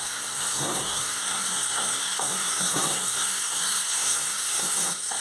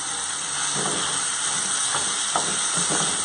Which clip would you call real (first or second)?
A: second